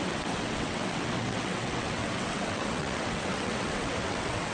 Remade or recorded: remade